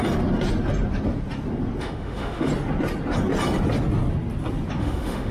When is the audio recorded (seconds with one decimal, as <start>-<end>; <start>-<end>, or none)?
0.0-1.8; 2.5-4.8